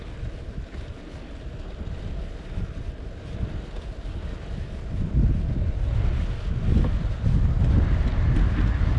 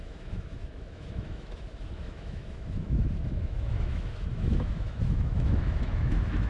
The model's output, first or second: second